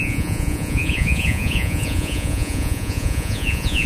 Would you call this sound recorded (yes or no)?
no